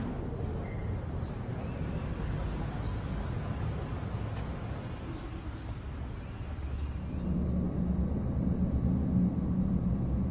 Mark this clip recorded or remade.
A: recorded